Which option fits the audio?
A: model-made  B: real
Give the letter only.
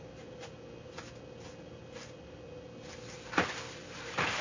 B